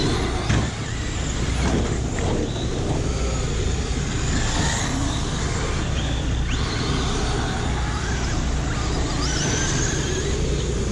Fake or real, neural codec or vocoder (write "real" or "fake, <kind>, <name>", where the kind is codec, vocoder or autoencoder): real